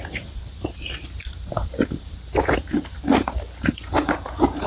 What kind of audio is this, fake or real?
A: real